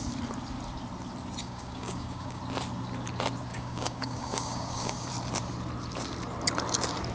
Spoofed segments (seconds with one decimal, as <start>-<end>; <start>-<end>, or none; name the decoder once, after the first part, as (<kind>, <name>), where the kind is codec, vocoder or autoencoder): 1.4-2.4 (codec, DAC); 3.5-5.1